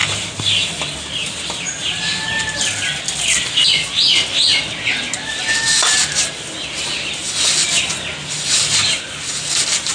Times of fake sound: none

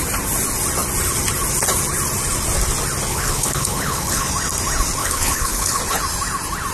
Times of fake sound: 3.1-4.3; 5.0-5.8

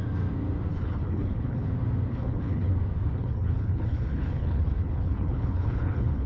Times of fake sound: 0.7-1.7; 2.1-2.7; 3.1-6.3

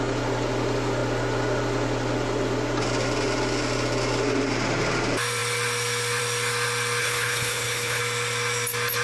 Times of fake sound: 7.0-8.0

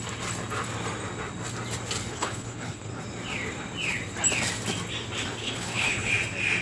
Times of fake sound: 2.1-3.0; 5.4-6.1

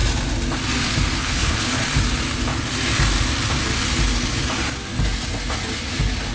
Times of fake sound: 1.2-1.8

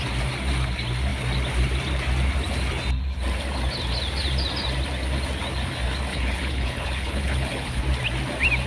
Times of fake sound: 6.1-7.8